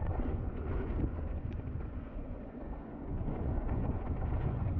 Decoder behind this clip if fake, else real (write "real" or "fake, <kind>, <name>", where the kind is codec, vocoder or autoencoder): fake, vocoder, Vocos